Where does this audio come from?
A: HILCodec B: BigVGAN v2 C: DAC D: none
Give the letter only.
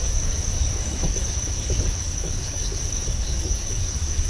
C